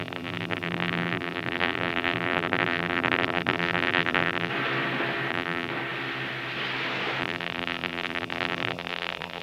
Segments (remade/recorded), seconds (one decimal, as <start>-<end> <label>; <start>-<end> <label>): 0.0-4.5 remade; 4.5-5.3 recorded; 5.3-5.7 remade; 5.7-7.2 recorded; 7.2-9.4 remade